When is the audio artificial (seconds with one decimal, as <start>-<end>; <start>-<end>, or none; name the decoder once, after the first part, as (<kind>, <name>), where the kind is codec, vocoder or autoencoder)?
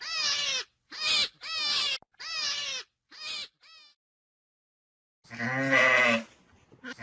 none